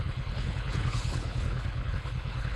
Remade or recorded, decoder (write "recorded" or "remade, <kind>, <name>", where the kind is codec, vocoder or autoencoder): remade, codec, HILCodec